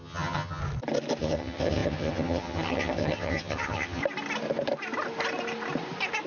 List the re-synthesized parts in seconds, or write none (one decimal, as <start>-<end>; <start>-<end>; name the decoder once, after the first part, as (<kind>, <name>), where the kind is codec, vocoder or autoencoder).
0.0-0.6 (vocoder, HiFi-GAN); 1.2-4.0